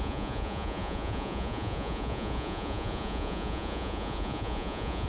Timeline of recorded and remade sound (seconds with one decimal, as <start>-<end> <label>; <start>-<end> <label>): 0.0-5.1 remade